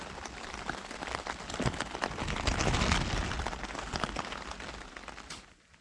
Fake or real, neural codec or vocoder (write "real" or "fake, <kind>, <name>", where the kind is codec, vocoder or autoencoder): real